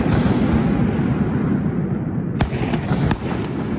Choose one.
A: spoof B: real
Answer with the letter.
B